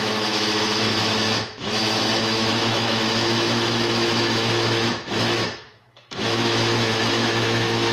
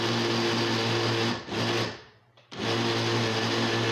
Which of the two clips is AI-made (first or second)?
first